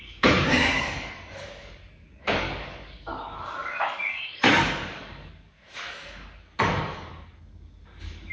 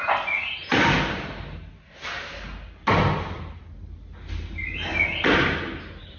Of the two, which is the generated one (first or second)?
first